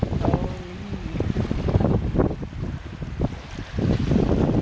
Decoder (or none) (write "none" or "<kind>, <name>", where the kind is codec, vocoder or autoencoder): none